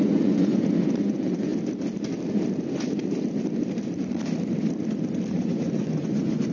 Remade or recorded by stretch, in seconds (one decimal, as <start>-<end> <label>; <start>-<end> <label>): 0.0-1.5 remade; 1.5-5.3 recorded; 5.3-6.5 remade